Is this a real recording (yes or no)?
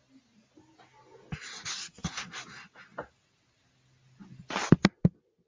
yes